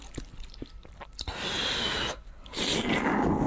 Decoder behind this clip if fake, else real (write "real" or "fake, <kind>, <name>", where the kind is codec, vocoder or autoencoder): real